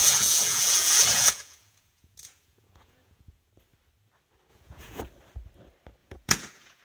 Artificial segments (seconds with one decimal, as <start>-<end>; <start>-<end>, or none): 0.0-3.5; 4.5-5.0; 6.0-6.8